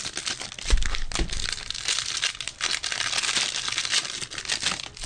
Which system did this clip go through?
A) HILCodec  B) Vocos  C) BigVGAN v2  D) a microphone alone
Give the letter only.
D